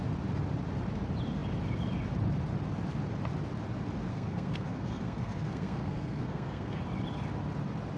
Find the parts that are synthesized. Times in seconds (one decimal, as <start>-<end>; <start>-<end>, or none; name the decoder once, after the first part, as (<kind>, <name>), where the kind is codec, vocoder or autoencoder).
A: 4.1-6.8 (codec, SNAC)